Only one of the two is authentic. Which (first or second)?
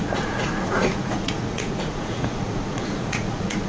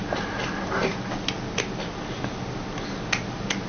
second